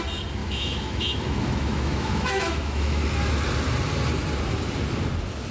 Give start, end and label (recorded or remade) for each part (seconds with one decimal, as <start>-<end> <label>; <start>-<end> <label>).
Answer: 0.0-0.4 recorded; 0.4-3.0 remade; 3.0-5.5 recorded